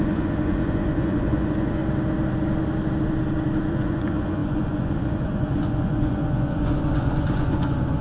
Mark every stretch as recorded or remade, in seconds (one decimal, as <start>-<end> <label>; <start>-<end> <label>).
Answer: 0.0-1.8 remade; 1.8-3.7 recorded; 3.7-8.0 remade